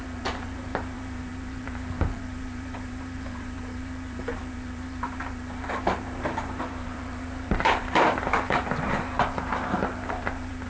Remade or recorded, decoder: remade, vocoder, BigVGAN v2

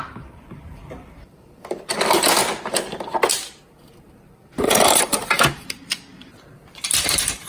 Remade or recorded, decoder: remade, vocoder, BigVGAN v2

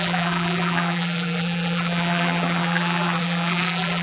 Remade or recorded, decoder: remade, vocoder, BigVGAN v2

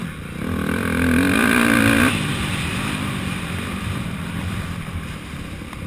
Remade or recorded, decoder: remade, vocoder, BigVGAN v2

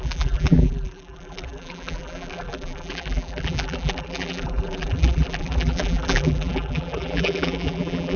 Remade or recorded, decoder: remade, vocoder, BigVGAN v2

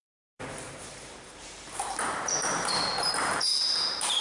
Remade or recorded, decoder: remade, vocoder, BigVGAN v2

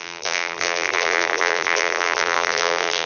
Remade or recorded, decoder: remade, vocoder, BigVGAN v2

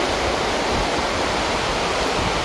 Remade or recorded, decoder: recorded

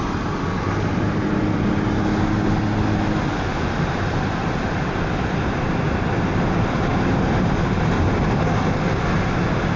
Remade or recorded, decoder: recorded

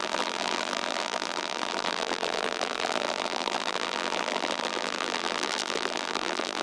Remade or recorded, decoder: remade, vocoder, BigVGAN v2